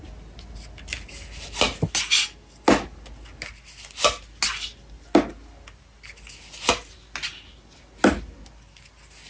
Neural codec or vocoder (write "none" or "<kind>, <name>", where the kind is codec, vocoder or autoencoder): none